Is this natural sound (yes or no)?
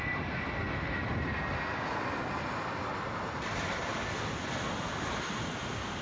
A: yes